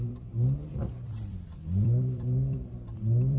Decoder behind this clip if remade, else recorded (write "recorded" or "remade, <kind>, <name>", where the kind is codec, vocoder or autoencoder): remade, vocoder, BigVGAN v2